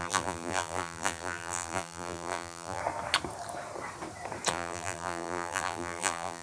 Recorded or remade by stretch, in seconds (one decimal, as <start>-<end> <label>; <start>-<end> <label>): 0.0-2.8 remade; 2.8-4.5 recorded; 4.5-6.4 remade